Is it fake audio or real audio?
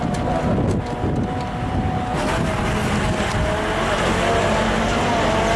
real